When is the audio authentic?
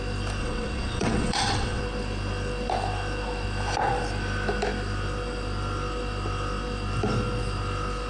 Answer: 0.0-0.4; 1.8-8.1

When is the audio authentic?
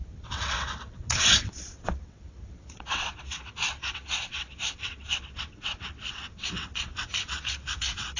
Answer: none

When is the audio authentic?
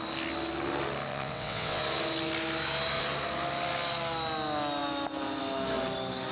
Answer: 0.0-1.1; 1.8-6.3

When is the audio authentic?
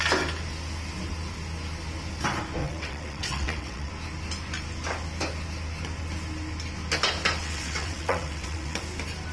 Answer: 0.0-2.6; 3.9-7.4; 8.8-9.3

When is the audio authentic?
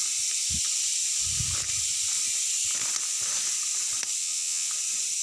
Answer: 0.0-4.2; 4.7-5.2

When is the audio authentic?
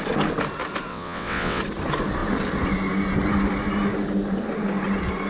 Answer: 0.0-0.9; 1.6-5.3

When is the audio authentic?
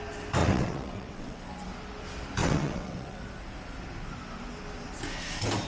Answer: 0.0-0.4; 1.4-2.4; 3.2-5.7